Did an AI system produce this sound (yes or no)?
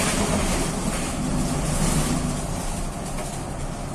no